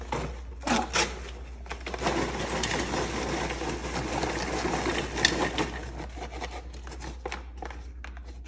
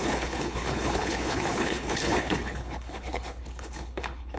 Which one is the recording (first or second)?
first